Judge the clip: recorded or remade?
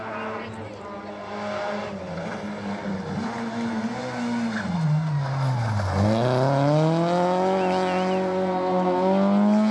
recorded